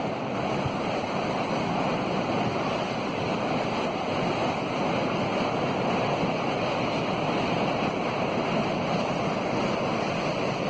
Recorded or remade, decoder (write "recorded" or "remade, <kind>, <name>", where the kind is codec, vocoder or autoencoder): recorded